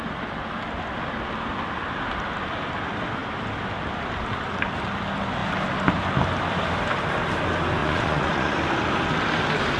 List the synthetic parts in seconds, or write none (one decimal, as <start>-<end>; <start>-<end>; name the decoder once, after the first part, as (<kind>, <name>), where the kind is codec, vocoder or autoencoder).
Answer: 7.8-8.6 (vocoder, Vocos)